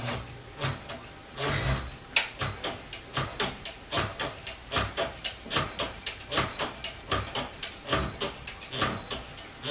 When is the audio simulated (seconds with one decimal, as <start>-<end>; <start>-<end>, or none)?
3.3-7.7